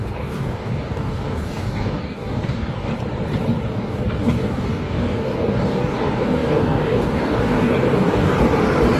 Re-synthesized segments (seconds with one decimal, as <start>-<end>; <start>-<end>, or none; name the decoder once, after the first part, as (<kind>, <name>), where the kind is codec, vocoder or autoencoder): 0.0-2.9 (codec, DAC); 3.7-8.3